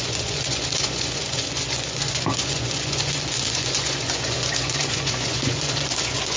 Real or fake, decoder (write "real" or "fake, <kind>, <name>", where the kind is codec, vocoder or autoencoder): fake, vocoder, Vocos